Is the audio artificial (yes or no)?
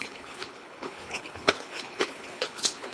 yes